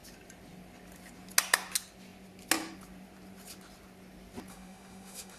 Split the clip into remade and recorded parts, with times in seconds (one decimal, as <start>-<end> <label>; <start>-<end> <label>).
0.0-4.5 recorded; 4.5-5.4 remade